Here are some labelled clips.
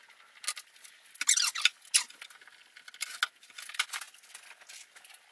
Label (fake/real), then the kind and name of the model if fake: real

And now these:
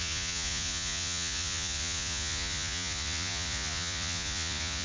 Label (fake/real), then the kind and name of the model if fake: fake, vocoder, Vocos